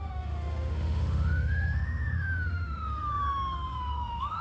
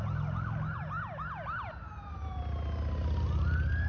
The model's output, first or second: first